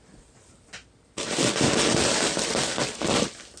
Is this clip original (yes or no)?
yes